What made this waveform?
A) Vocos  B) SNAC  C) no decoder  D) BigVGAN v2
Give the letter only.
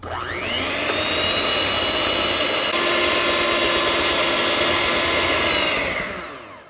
C